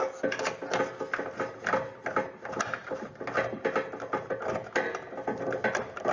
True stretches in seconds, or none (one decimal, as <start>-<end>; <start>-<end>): 0.0-6.1